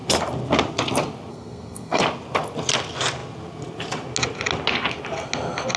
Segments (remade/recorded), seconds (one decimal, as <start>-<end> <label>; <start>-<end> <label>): 0.0-1.3 recorded; 1.3-2.0 remade; 2.0-5.8 recorded